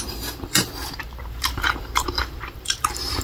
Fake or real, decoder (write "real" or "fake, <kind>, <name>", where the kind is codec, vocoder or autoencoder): fake, vocoder, BigVGAN v2